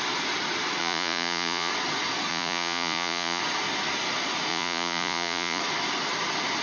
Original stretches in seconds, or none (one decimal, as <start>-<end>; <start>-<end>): 0.0-0.8; 1.7-2.3; 3.4-4.5; 5.6-6.6